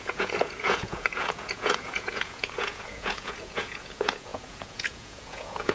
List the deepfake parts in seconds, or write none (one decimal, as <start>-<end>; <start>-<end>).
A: 0.0-5.7